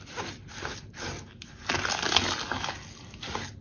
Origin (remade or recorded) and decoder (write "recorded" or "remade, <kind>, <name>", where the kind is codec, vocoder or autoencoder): recorded